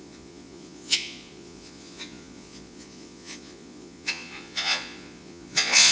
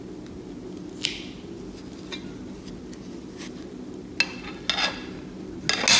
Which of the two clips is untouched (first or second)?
second